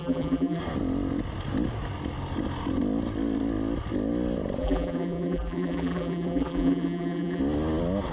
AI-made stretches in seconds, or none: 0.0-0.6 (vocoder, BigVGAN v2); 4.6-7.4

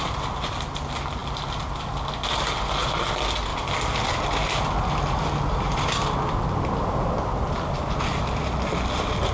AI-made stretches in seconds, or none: none

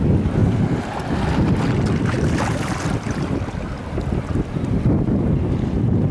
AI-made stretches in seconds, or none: none

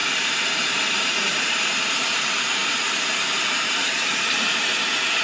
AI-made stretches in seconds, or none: 0.0-2.6 (vocoder, BigVGAN v2); 3.4-5.2

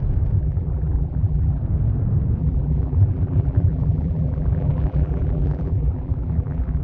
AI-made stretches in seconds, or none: 0.4-1.6 (vocoder, BigVGAN v2); 2.4-6.8

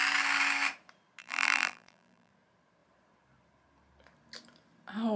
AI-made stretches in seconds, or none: 1.2-2.3 (vocoder, BigVGAN v2)

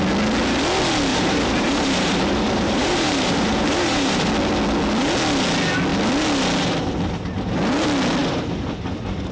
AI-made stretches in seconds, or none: 1.1-4.3 (vocoder, BigVGAN v2)